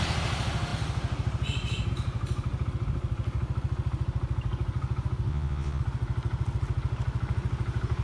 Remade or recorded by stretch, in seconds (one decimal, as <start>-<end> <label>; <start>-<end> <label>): 0.0-5.3 recorded; 5.3-5.8 remade; 5.8-8.0 recorded